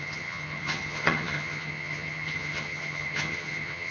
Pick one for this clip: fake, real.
fake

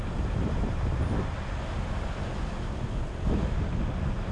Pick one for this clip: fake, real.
real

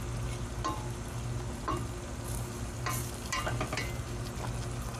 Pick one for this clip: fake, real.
real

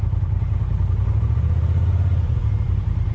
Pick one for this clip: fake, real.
real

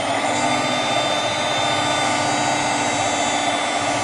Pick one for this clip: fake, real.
real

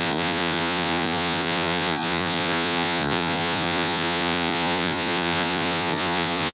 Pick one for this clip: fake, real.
fake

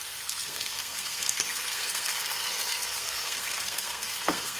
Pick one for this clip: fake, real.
fake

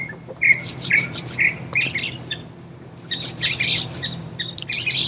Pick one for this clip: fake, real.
fake